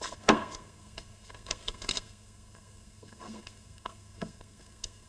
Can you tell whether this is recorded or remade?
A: remade